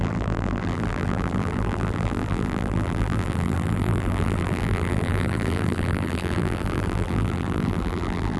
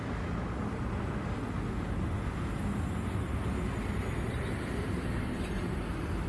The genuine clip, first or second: second